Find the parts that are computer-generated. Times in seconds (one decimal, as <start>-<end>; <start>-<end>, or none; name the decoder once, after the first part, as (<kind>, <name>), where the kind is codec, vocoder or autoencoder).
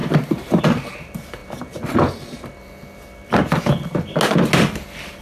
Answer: 0.0-0.6 (vocoder, BigVGAN v2)